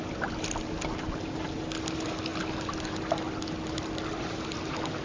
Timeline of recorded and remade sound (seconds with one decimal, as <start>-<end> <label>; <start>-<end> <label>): 0.0-5.0 recorded